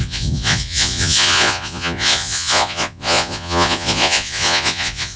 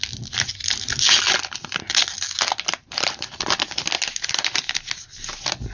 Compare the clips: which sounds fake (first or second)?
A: first